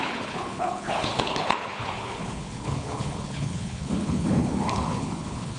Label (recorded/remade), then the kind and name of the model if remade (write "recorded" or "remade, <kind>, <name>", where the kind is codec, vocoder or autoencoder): remade, codec, HILCodec